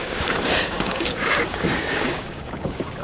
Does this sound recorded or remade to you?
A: remade